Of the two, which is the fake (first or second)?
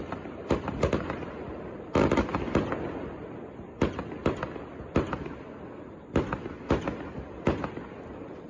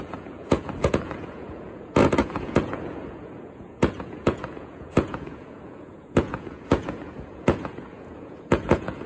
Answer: second